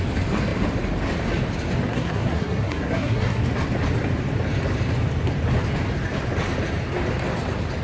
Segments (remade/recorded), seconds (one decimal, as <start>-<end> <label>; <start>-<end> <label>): 0.0-1.9 recorded; 1.9-3.4 remade; 3.4-7.8 recorded